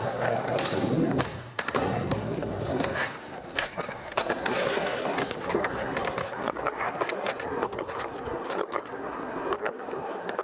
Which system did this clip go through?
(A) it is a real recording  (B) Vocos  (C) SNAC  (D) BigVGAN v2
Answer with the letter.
C